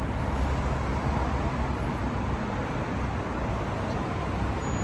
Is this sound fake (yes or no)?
no